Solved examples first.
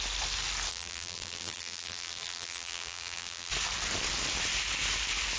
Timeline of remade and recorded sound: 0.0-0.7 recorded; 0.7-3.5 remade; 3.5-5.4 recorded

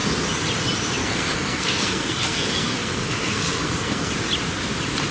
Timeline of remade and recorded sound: 0.0-1.0 recorded; 1.0-4.1 remade; 4.1-5.1 recorded

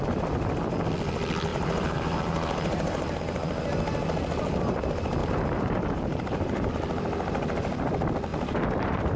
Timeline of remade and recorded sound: 0.0-1.5 recorded; 1.5-3.2 remade; 3.2-5.2 recorded; 5.2-6.7 remade; 6.7-8.3 recorded; 8.3-9.2 remade